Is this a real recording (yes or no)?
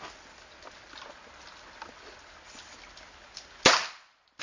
yes